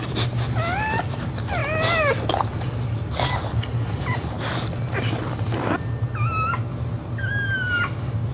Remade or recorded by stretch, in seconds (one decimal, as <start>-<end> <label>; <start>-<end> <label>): 0.0-8.3 recorded